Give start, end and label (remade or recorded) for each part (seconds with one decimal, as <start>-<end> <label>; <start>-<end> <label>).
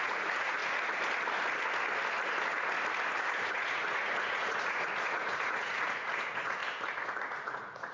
0.0-0.6 remade; 0.6-3.5 recorded; 3.5-6.6 remade; 6.6-7.2 recorded; 7.2-7.9 remade